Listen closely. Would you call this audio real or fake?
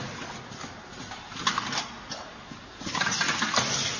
real